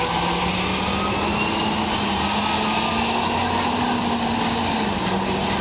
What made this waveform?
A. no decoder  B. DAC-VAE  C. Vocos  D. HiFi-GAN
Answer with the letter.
A